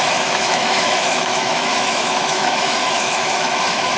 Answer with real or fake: fake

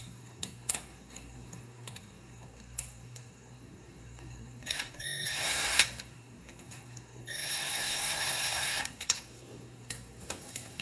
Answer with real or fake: fake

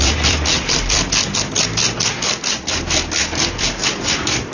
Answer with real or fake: real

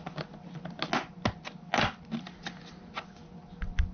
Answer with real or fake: real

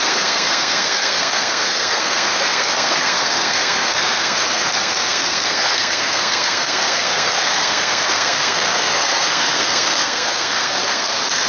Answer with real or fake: fake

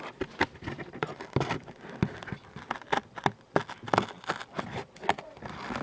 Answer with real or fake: real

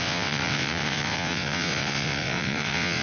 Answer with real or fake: fake